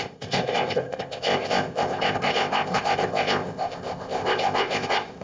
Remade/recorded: remade